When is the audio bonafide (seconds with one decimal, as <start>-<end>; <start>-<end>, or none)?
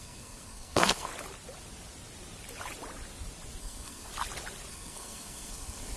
1.1-3.6; 4.1-4.7